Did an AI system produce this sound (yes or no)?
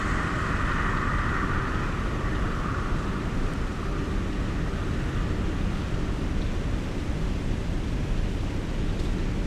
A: no